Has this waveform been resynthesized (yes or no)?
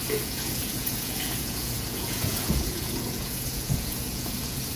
yes